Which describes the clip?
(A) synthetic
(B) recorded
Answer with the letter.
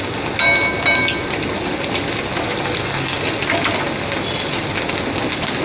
B